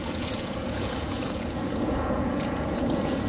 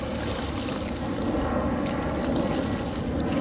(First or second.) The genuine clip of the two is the second